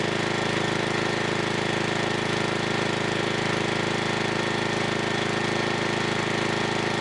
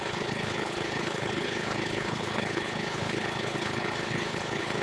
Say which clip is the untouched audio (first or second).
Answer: first